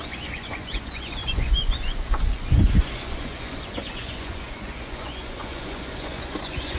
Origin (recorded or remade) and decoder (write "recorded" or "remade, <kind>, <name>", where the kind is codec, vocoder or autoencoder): remade, vocoder, Vocos